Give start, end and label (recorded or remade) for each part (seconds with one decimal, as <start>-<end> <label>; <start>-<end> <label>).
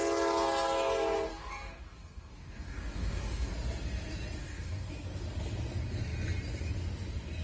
0.0-1.3 recorded; 1.3-3.5 remade; 3.5-4.4 recorded; 4.4-4.9 remade; 4.9-7.4 recorded